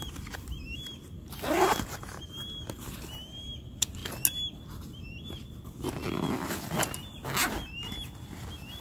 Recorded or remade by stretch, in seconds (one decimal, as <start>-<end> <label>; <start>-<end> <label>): 0.0-8.8 recorded